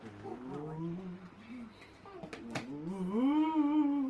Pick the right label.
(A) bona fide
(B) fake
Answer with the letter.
A